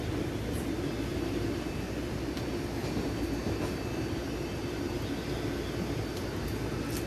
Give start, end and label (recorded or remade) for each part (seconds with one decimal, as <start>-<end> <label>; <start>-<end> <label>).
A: 0.0-1.1 recorded; 1.1-2.2 remade; 2.2-7.1 recorded